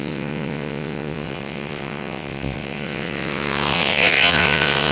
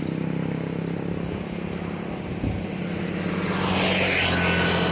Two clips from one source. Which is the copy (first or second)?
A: first